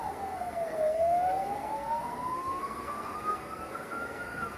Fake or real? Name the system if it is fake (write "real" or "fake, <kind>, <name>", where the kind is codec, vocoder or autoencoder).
fake, codec, SNAC